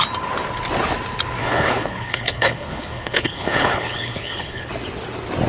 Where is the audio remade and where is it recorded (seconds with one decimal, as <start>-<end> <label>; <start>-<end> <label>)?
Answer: 0.0-1.4 recorded; 1.4-4.7 remade; 4.7-5.5 recorded